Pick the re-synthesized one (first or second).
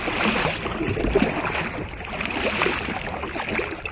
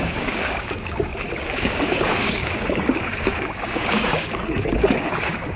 second